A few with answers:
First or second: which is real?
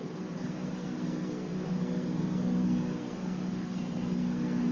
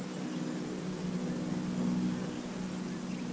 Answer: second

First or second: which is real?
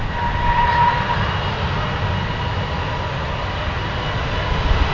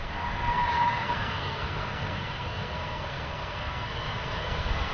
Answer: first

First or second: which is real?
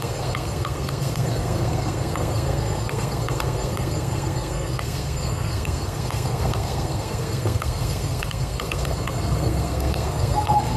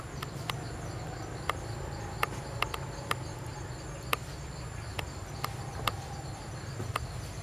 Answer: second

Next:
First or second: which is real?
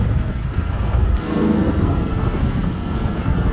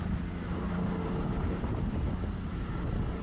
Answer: second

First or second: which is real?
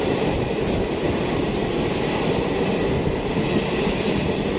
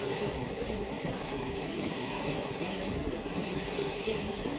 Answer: first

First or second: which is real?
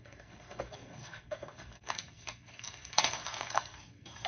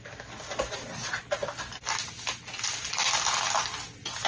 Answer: second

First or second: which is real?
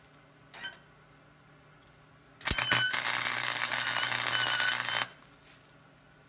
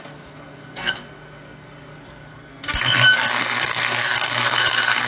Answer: first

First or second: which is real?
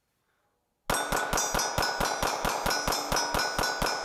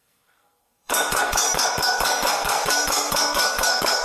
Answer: first